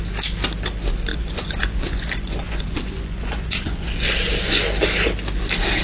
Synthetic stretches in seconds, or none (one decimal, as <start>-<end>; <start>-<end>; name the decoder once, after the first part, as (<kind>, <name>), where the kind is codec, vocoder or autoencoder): 1.1-4.6 (vocoder, Vocos)